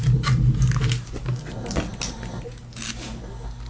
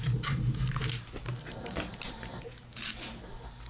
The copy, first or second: second